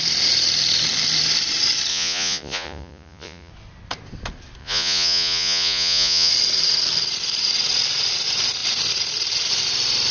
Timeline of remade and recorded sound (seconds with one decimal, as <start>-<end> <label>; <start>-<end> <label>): 0.0-1.9 recorded; 1.9-3.5 remade; 3.5-4.6 recorded; 4.6-6.3 remade; 6.3-10.1 recorded